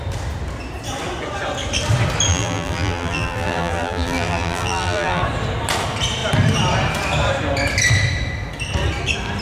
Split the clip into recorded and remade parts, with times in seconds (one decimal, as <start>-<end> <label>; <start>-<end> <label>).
0.0-2.3 recorded; 2.3-5.2 remade; 5.2-9.4 recorded